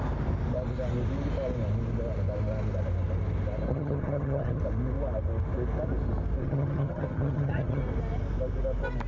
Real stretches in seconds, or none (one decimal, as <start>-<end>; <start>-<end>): 0.0-3.7; 4.6-6.4; 7.8-9.1

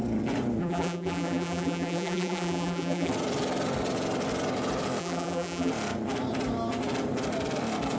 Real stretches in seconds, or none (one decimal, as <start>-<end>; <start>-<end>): 0.0-0.6; 3.1-5.0; 5.7-8.0

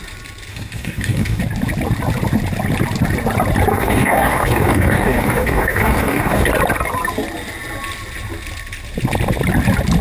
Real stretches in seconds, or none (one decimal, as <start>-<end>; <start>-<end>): 0.0-0.5; 1.4-3.7; 6.5-10.0

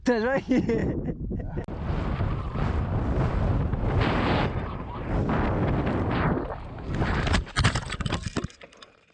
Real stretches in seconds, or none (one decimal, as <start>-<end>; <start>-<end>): 0.0-3.7; 5.1-9.1

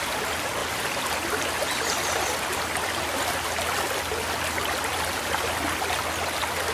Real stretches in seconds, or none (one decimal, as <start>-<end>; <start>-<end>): 0.0-6.7

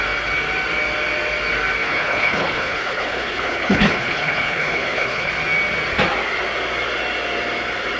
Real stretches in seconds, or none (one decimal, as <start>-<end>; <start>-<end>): 0.0-1.8; 5.3-8.0

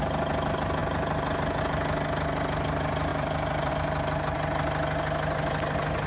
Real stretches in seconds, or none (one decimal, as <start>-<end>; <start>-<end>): 0.0-3.1; 3.7-6.1